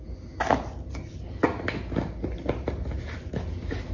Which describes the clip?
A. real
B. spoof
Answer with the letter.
A